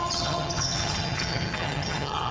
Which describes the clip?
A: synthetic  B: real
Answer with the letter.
A